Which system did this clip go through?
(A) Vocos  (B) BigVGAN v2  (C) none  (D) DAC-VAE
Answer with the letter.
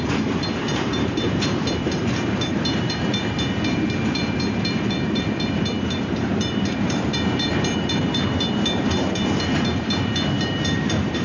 B